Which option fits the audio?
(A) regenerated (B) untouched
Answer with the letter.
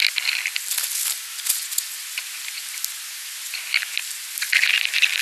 B